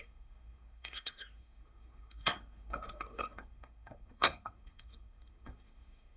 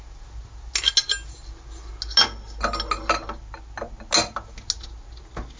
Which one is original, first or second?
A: second